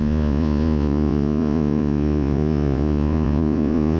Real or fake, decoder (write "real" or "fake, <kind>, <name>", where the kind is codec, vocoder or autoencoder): fake, vocoder, Vocos